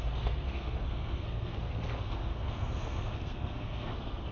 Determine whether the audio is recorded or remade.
remade